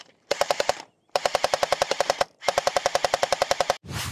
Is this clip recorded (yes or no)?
no